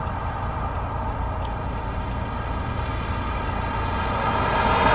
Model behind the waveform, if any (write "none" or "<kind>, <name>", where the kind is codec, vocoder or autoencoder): none